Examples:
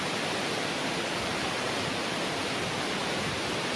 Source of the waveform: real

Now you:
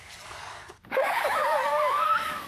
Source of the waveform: fake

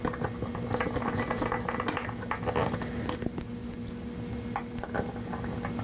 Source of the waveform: real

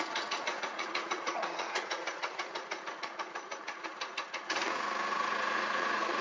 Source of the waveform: fake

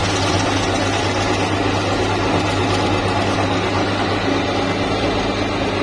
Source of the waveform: real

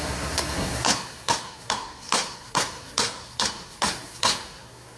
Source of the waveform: fake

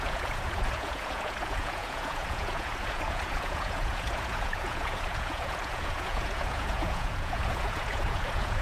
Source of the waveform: fake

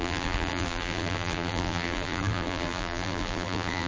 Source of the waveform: fake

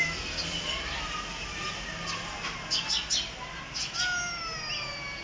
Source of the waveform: real